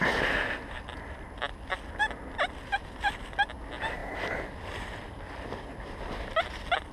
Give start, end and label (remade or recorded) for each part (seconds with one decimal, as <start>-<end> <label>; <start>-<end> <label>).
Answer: 0.0-6.9 recorded